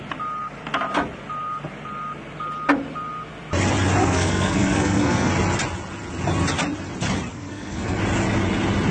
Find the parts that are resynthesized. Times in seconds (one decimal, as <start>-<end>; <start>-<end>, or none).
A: 4.0-5.3; 7.3-8.0